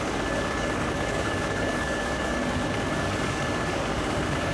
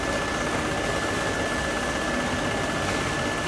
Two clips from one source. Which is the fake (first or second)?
first